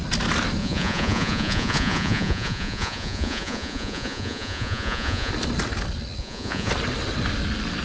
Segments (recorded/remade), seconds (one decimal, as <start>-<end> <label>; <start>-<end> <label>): 0.0-0.6 recorded; 0.6-5.3 remade; 5.3-6.2 recorded; 6.2-6.7 remade; 6.7-7.8 recorded